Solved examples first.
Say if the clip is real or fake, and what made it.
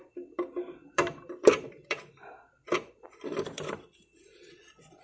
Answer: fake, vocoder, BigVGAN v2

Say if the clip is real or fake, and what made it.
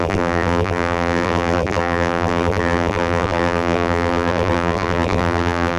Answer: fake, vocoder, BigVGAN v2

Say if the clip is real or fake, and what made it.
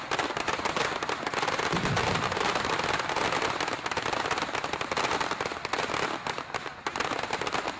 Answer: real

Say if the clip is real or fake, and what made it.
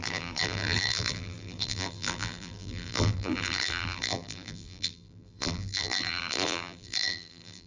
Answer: fake, vocoder, BigVGAN v2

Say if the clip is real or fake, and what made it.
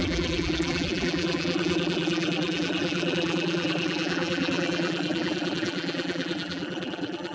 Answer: fake, vocoder, BigVGAN v2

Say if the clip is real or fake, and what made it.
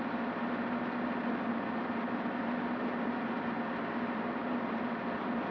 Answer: real